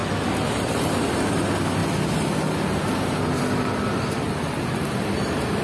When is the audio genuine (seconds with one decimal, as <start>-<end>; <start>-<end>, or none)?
0.0-5.6